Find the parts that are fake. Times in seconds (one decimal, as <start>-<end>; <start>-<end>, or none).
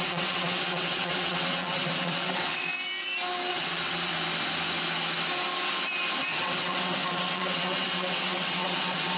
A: 0.0-2.7; 3.5-4.1; 6.4-9.2